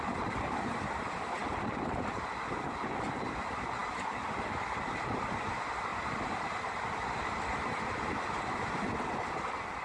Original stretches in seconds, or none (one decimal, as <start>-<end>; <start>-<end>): 0.0-9.8